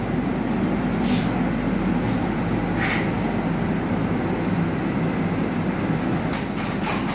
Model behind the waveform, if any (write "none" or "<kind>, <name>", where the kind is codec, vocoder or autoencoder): none